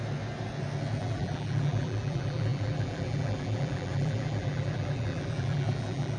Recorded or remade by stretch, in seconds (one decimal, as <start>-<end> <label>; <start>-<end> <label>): 0.0-1.0 recorded; 1.0-6.2 remade